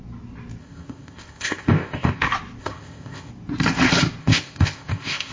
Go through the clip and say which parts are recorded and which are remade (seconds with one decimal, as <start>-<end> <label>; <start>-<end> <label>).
0.0-0.6 recorded; 0.6-2.2 remade; 2.2-2.6 recorded; 2.6-3.3 remade; 3.3-4.2 recorded; 4.2-5.3 remade